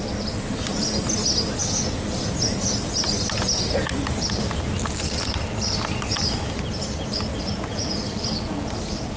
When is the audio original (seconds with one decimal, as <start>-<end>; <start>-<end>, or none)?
0.0-9.2